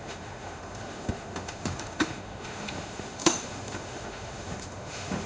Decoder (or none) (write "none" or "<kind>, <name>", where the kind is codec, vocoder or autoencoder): autoencoder, DAC-VAE